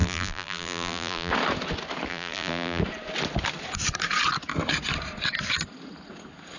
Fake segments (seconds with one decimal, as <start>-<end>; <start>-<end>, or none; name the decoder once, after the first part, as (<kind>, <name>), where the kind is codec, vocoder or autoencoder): 0.0-1.3 (vocoder, BigVGAN v2); 2.1-2.8